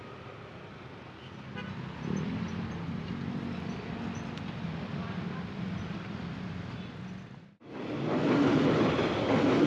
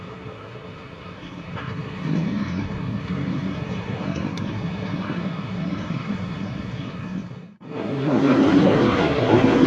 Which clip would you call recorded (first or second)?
first